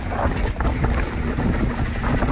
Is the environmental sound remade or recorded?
recorded